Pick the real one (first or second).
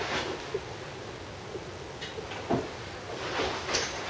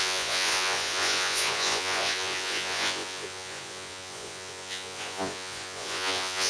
first